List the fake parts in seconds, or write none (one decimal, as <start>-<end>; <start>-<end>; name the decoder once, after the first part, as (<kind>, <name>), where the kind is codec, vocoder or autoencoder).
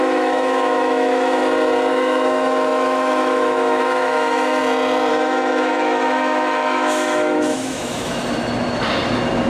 0.0-1.4 (autoencoder, DAC-VAE); 1.9-4.6; 5.1-8.2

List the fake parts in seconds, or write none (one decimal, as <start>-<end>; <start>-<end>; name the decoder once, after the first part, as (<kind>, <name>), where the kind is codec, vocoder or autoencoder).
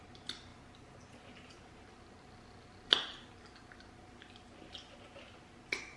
none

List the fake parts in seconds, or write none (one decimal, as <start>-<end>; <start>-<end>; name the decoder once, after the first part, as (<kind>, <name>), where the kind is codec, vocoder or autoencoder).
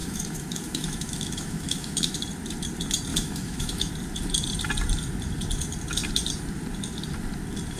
0.0-2.2 (autoencoder, DAC-VAE); 3.1-3.9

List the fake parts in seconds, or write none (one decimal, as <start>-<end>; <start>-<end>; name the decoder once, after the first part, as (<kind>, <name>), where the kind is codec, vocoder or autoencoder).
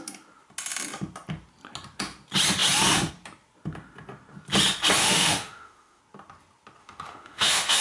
5.0-6.0 (autoencoder, DAC-VAE); 6.8-7.8